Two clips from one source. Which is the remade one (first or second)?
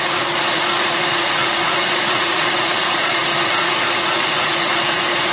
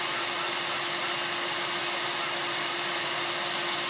first